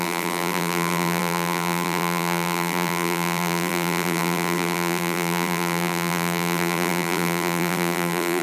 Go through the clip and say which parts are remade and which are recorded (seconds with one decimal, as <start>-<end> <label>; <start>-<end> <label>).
0.0-8.4 remade